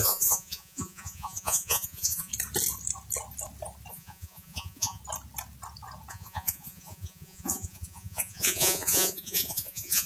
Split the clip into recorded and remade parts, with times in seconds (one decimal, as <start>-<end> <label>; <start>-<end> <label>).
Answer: 0.0-2.3 remade; 2.3-3.9 recorded; 3.9-5.0 remade; 5.0-6.1 recorded; 6.1-10.1 remade